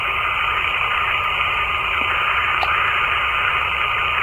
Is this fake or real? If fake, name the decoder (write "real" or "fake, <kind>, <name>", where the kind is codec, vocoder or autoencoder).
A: real